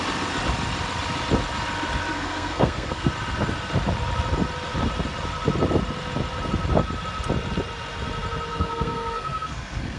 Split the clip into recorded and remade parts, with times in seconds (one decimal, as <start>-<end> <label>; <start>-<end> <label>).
0.0-2.1 recorded; 2.1-3.1 remade; 3.1-8.5 recorded; 8.5-10.0 remade